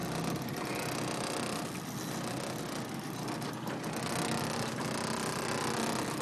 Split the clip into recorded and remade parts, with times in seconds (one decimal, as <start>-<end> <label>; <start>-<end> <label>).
0.0-6.2 recorded